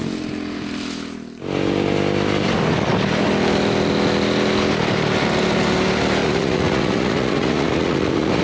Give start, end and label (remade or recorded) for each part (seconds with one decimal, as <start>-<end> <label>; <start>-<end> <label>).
0.0-6.2 recorded; 6.2-8.4 remade